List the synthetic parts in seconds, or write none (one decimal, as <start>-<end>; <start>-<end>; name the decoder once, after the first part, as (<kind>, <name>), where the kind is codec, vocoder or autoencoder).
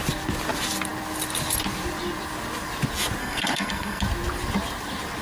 3.2-4.0 (codec, SNAC)